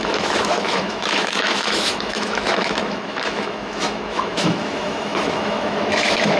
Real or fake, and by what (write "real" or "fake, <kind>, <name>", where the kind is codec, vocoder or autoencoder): fake, autoencoder, DAC-VAE